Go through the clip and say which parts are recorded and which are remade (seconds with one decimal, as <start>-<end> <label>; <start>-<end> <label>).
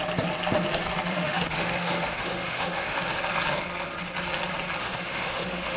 0.0-1.1 recorded; 1.1-3.2 remade; 3.2-4.8 recorded; 4.8-5.8 remade